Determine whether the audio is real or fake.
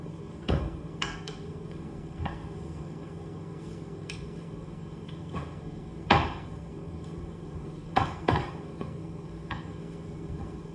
fake